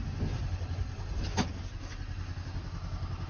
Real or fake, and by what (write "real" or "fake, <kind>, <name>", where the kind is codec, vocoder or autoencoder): real